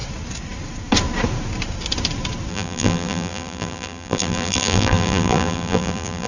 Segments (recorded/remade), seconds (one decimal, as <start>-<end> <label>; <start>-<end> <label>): 0.0-2.5 recorded; 2.5-6.3 remade